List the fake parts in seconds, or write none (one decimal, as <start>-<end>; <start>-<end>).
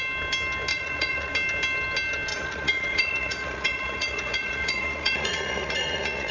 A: 0.7-1.3; 2.3-6.3